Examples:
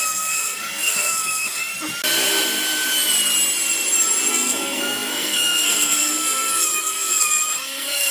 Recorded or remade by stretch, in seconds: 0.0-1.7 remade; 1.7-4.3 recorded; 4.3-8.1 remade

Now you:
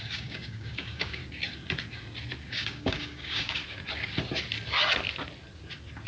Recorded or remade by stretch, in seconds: 0.0-1.2 remade; 1.2-2.5 recorded; 2.5-3.6 remade; 3.6-6.1 recorded

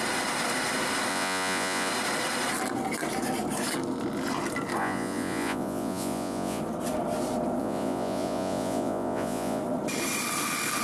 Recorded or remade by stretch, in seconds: 0.0-1.1 recorded; 1.1-1.9 remade; 1.9-4.8 recorded; 4.8-6.6 remade; 6.6-7.6 recorded; 7.6-9.6 remade; 9.6-10.8 recorded